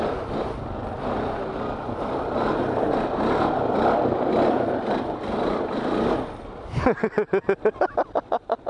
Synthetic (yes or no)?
no